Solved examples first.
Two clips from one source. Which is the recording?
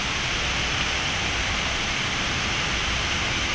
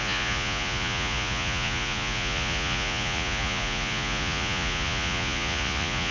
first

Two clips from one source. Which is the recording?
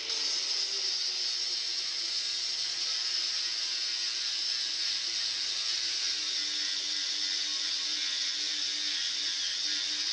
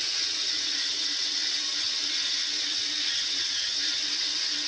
first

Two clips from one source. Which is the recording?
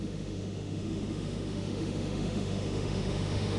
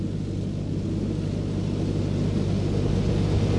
second